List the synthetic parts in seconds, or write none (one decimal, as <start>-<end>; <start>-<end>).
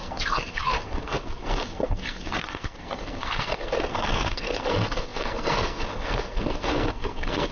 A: 0.0-7.5